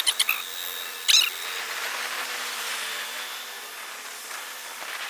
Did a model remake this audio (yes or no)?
no